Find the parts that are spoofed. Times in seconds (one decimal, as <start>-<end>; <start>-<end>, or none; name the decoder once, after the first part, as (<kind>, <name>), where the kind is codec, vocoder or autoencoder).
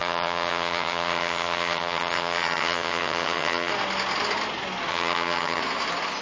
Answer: 0.0-3.7 (vocoder, HiFi-GAN); 4.9-5.6